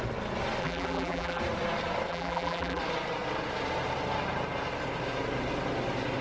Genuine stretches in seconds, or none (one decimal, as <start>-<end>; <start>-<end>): 0.0-0.6; 1.4-2.1; 2.8-6.2